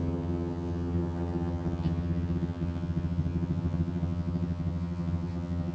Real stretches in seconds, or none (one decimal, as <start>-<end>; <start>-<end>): none